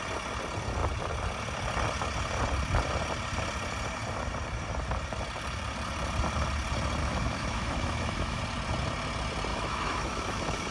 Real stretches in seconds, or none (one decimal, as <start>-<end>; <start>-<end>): 0.0-7.0; 8.4-9.5